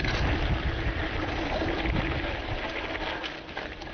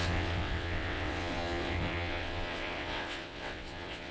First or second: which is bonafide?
first